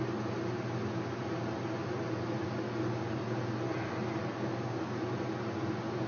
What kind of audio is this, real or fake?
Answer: real